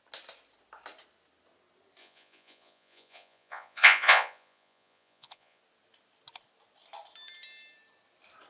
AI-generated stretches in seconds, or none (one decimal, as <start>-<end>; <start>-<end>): 2.0-5.6